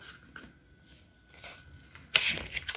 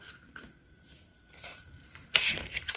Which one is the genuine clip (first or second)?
first